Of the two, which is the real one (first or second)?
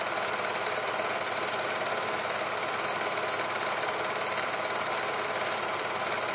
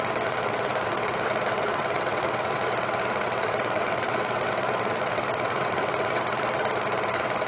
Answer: first